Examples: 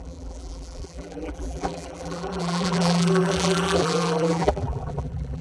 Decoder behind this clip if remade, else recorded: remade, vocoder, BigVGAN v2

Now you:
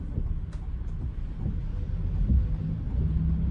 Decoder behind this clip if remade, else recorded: recorded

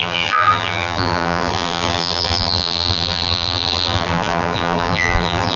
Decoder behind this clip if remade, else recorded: remade, vocoder, BigVGAN v2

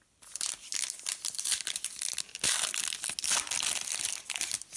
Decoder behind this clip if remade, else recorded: recorded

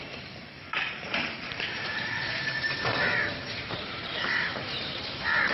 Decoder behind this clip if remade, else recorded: remade, vocoder, BigVGAN v2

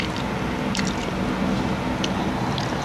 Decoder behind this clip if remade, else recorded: recorded